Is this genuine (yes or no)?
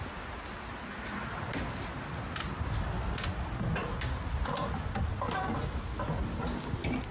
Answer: yes